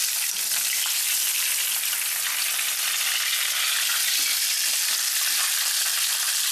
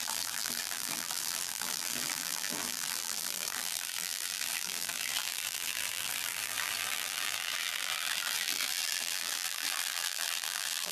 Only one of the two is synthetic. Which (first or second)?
second